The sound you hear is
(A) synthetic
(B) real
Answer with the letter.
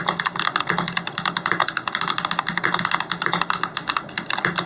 B